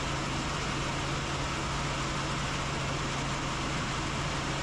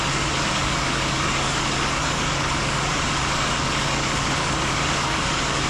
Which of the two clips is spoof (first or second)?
second